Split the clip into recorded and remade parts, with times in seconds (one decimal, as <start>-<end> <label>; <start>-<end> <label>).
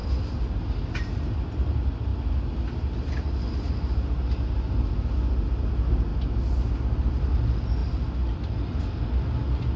0.0-9.8 recorded